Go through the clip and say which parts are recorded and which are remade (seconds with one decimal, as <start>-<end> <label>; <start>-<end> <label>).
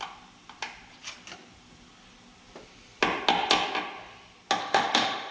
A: 0.0-4.6 recorded; 4.6-5.3 remade